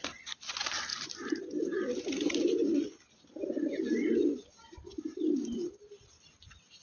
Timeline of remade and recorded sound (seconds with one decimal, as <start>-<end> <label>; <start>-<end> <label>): 0.0-6.8 recorded